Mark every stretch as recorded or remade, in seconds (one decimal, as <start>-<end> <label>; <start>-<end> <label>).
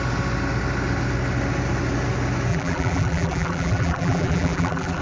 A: 0.0-2.5 recorded; 2.5-5.0 remade